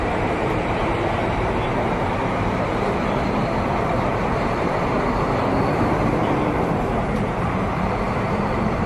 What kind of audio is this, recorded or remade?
remade